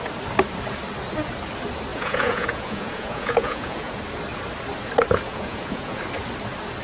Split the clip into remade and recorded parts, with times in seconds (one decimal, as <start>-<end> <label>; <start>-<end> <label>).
0.0-1.9 recorded; 1.9-4.0 remade; 4.0-5.3 recorded; 5.3-6.0 remade; 6.0-6.8 recorded